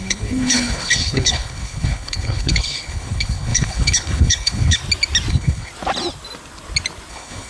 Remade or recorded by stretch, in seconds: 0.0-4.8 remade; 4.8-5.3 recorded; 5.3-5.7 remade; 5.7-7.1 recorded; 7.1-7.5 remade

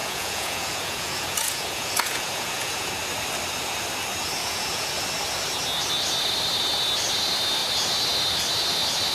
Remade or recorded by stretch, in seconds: 0.0-2.9 remade; 2.9-4.4 recorded; 4.4-5.0 remade; 5.0-9.1 recorded